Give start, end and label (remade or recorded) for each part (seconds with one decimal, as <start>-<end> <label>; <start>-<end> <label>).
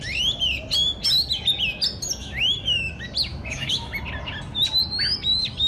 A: 0.0-2.2 recorded; 2.2-2.9 remade; 2.9-3.3 recorded; 3.3-4.0 remade; 4.0-5.7 recorded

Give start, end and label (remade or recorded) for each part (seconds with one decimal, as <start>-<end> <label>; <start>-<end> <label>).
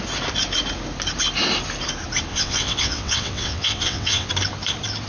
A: 0.0-2.3 recorded; 2.3-4.3 remade; 4.3-5.1 recorded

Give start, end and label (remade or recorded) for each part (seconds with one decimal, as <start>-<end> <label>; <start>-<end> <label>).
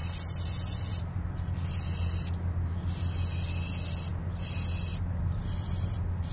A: 0.0-6.3 recorded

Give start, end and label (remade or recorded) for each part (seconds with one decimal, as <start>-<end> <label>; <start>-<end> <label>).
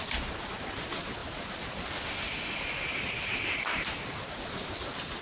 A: 0.0-5.2 recorded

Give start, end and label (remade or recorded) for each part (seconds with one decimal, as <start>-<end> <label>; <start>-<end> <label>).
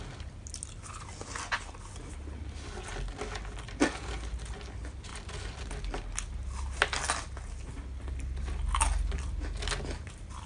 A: 0.0-10.5 recorded